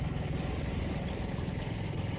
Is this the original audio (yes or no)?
yes